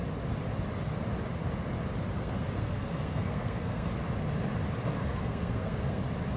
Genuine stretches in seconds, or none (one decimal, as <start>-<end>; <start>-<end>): 0.0-2.1; 3.9-5.0; 6.0-6.4

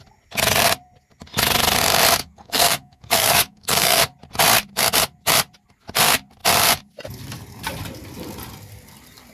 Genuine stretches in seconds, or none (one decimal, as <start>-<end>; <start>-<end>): 0.0-2.2; 4.0-9.3